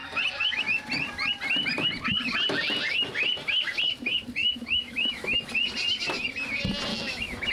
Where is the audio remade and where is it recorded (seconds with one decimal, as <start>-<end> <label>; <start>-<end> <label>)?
0.0-4.4 recorded; 4.4-5.4 remade; 5.4-6.9 recorded; 6.9-7.5 remade